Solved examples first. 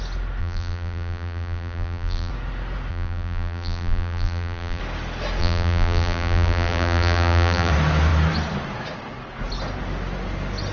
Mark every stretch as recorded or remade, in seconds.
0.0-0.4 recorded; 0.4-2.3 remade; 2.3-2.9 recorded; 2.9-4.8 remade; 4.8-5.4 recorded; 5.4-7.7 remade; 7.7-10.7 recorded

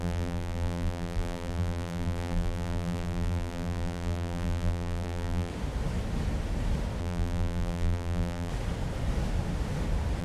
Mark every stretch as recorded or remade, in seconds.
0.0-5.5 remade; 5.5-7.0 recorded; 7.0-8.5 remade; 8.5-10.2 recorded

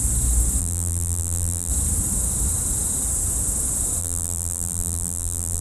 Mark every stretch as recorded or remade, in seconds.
0.0-0.6 recorded; 0.6-1.7 remade; 1.7-4.0 recorded; 4.0-5.6 remade

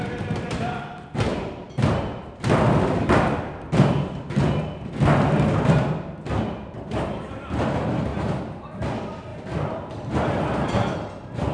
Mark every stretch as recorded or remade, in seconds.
0.0-1.3 recorded; 1.3-4.4 remade; 4.4-9.3 recorded; 9.3-10.7 remade; 10.7-11.5 recorded

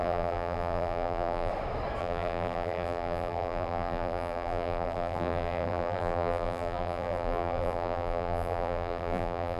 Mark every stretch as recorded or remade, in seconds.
0.0-1.5 remade; 1.5-2.0 recorded; 2.0-9.6 remade